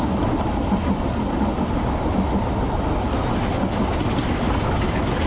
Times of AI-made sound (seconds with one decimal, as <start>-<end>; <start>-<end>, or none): none